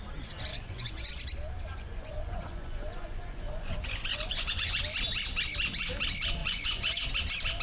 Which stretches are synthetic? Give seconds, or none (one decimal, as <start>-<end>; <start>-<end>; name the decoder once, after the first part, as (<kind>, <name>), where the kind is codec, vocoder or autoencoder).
0.5-1.1 (vocoder, Vocos); 1.7-4.8; 6.4-7.0

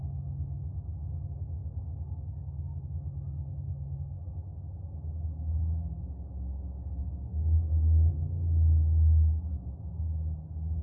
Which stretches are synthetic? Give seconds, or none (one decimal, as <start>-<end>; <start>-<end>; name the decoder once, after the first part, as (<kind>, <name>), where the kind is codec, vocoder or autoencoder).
3.7-4.3 (codec, SNAC); 7.0-8.1